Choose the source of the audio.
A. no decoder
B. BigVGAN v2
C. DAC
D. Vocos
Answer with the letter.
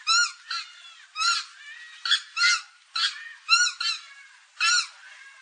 A